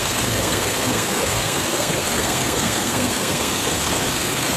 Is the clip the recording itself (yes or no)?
no